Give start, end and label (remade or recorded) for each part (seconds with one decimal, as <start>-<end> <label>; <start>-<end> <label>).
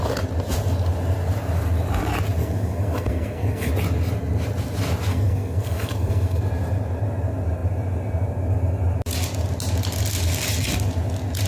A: 0.0-2.4 recorded; 2.4-3.7 remade; 3.7-5.1 recorded; 5.1-6.4 remade; 6.4-11.5 recorded